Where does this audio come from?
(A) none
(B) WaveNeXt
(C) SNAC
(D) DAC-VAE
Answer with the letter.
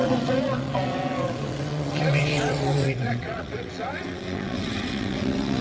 B